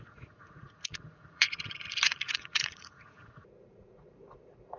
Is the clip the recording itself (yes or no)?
no